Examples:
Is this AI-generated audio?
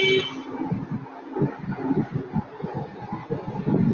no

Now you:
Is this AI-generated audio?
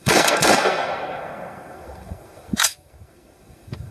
yes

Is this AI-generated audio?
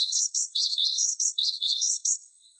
yes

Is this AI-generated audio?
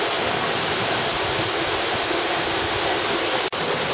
no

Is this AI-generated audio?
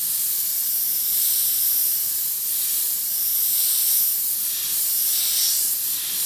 no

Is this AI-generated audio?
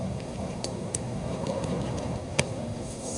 yes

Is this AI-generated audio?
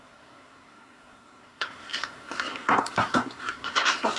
yes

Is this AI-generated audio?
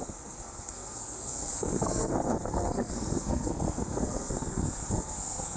yes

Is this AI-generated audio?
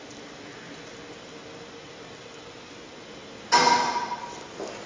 no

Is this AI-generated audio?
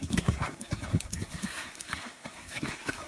yes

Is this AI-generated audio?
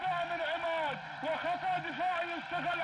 no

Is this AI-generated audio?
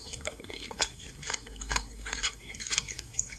yes